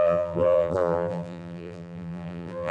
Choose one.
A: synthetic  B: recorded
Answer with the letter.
A